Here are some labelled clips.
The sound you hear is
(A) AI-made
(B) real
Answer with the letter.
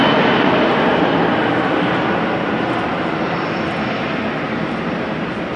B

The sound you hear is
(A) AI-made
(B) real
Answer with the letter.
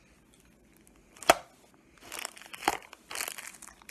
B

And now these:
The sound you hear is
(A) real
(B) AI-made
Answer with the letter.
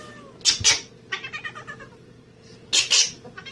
A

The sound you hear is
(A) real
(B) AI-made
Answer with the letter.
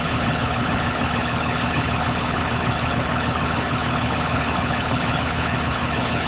B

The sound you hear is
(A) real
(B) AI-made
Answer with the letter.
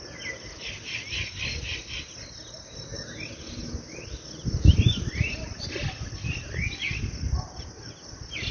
A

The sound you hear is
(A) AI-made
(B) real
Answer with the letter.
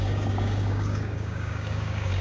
A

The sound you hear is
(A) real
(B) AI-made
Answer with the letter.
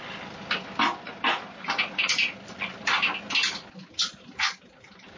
A